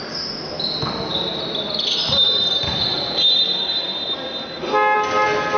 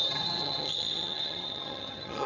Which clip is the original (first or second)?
first